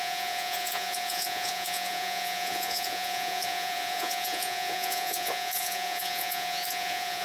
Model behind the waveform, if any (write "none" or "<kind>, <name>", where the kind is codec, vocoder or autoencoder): vocoder, Vocos